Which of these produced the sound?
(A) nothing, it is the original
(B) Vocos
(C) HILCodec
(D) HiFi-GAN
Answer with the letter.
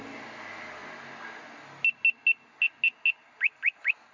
A